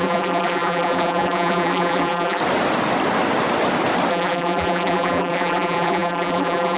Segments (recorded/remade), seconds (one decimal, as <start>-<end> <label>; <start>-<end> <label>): 0.0-2.4 remade; 2.4-4.1 recorded; 4.1-6.8 remade